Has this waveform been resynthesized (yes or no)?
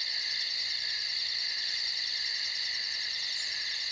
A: no